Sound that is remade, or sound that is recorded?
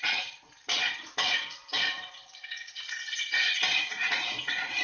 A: remade